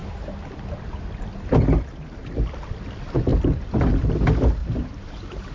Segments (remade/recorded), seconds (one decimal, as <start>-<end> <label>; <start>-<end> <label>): 0.0-3.3 recorded; 3.3-4.1 remade; 4.1-4.6 recorded; 4.6-5.5 remade